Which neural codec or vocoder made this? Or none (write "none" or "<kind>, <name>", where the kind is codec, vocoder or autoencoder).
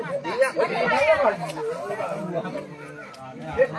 none